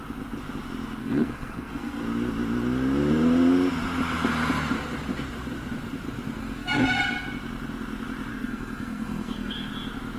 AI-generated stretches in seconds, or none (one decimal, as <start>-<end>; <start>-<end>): 1.0-2.0; 6.4-7.0; 8.3-9.7